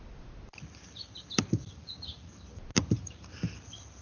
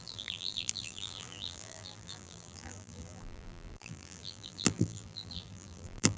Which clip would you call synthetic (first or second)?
second